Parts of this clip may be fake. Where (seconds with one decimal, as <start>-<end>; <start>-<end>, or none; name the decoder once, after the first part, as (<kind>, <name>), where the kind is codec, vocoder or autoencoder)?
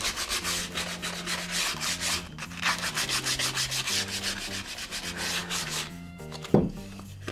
5.4-6.8 (codec, DAC)